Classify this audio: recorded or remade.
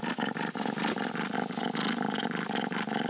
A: recorded